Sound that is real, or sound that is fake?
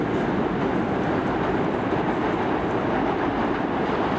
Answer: real